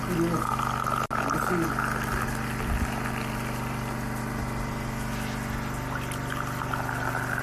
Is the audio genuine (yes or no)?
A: yes